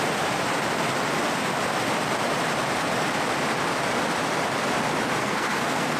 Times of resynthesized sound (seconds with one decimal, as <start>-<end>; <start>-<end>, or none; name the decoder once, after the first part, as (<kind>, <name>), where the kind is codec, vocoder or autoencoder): 5.2-6.0 (codec, SNAC)